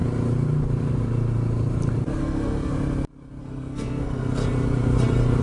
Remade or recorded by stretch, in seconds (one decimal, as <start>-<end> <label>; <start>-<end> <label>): 0.0-2.2 recorded; 2.2-2.7 remade; 2.7-3.4 recorded; 3.4-4.4 remade; 4.4-5.4 recorded